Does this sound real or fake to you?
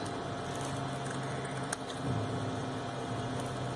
real